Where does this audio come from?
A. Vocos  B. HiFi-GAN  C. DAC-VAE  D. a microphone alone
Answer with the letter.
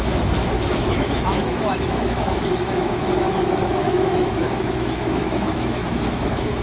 C